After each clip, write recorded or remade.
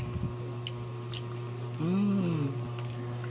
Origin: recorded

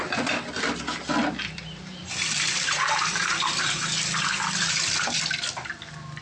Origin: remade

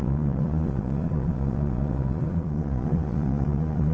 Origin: remade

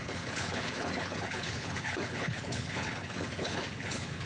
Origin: remade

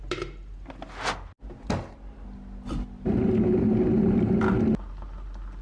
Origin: recorded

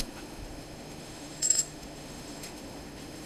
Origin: remade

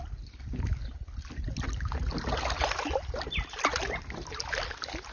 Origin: recorded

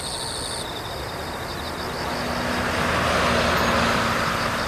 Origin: recorded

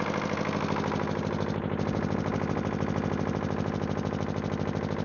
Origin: recorded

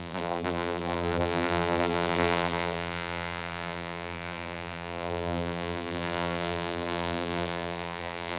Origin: remade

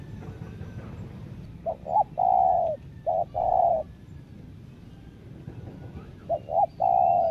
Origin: recorded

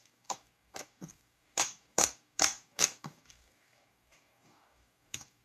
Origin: remade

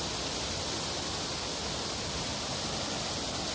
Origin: recorded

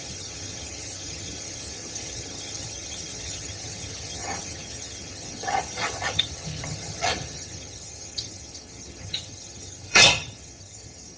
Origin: remade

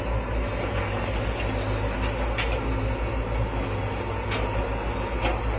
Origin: recorded